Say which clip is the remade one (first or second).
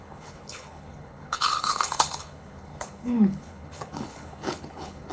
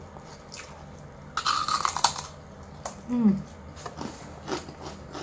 first